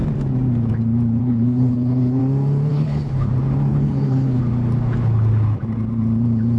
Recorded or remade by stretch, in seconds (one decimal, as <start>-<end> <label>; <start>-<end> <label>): 0.0-1.2 recorded; 1.2-2.2 remade; 2.2-2.7 recorded; 2.7-3.3 remade; 3.3-3.7 recorded; 3.7-4.4 remade; 4.4-6.6 recorded